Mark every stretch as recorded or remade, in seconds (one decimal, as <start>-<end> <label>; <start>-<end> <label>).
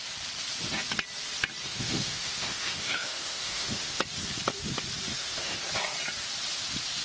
0.0-1.6 recorded; 1.6-4.0 remade; 4.0-5.1 recorded; 5.1-5.6 remade; 5.6-7.0 recorded